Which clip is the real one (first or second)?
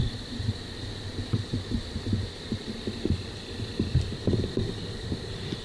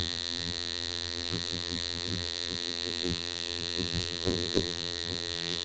first